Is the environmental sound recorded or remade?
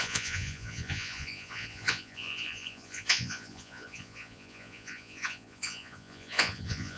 remade